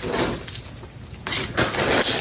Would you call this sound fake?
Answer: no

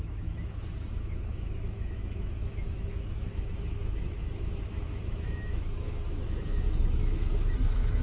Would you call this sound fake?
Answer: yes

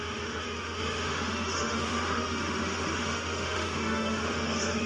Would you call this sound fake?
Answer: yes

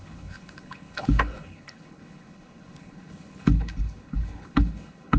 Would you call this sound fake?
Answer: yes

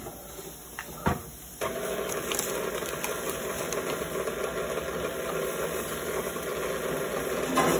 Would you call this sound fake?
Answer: no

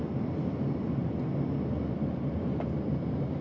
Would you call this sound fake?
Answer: no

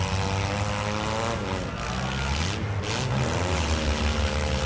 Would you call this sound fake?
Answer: no